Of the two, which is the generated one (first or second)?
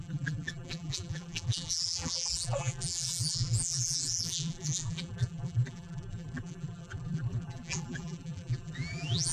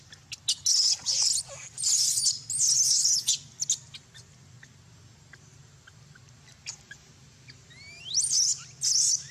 first